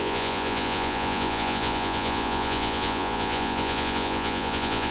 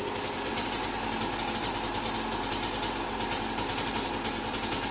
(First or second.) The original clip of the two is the second